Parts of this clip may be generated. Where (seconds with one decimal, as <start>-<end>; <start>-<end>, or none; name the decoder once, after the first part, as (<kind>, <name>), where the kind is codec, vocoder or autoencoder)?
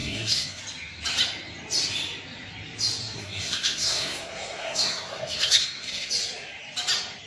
0.0-0.6 (codec, SNAC); 3.0-6.1